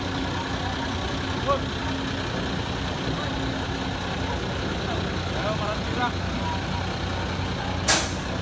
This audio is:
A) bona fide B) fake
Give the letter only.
A